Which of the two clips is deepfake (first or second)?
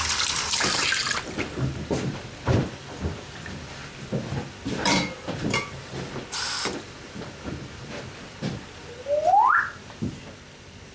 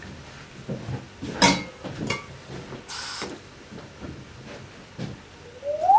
first